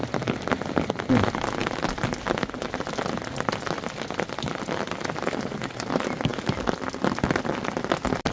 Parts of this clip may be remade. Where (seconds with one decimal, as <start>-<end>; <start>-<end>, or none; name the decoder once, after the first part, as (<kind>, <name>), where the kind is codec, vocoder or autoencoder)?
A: none